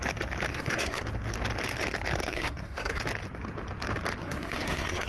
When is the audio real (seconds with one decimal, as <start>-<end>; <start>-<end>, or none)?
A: 0.0-0.5; 1.0-2.2; 3.0-4.2